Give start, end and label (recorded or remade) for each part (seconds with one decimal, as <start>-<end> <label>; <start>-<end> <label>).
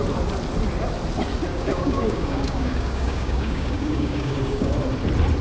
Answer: 0.0-1.5 recorded; 1.5-4.7 remade; 4.7-5.4 recorded